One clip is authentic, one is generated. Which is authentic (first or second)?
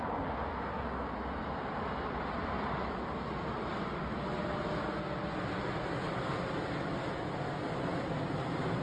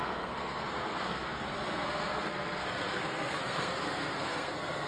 first